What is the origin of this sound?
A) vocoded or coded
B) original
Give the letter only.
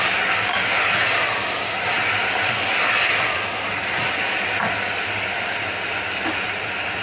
B